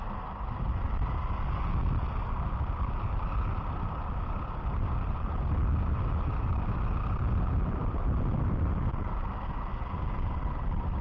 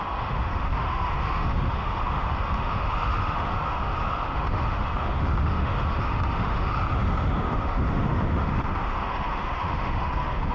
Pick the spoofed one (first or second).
second